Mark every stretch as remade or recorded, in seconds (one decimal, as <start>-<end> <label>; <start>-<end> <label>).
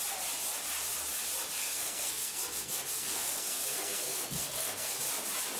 0.0-1.6 recorded; 1.6-5.0 remade; 5.0-5.6 recorded